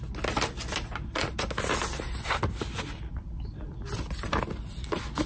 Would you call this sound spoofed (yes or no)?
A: no